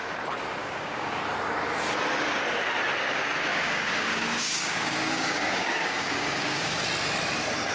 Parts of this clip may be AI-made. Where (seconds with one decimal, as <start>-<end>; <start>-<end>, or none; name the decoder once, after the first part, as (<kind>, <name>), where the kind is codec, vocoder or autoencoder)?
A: 0.6-1.2 (codec, DAC); 3.5-6.8